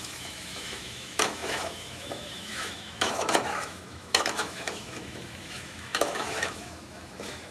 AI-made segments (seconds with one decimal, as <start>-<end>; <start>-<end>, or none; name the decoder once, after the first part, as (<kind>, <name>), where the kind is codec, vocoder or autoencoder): 0.0-7.5 (autoencoder, DAC-VAE)